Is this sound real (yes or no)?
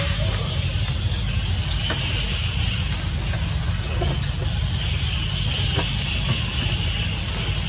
yes